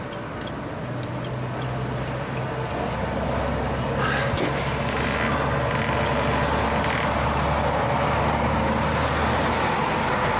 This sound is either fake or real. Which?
real